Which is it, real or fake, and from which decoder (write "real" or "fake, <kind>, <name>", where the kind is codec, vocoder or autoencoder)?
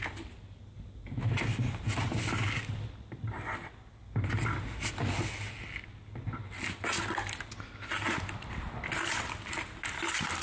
real